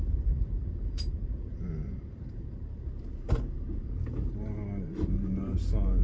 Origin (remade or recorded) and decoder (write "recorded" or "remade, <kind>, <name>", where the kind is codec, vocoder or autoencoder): remade, vocoder, BigVGAN v2